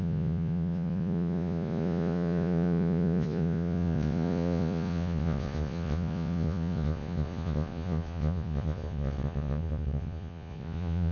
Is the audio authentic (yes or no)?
no